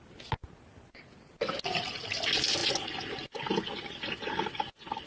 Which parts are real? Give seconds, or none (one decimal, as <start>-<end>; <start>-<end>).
0.0-5.1